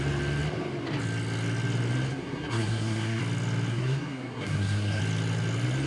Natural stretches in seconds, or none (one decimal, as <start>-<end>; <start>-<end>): 0.0-2.1; 3.2-3.7; 5.0-5.9